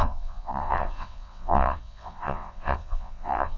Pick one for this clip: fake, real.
fake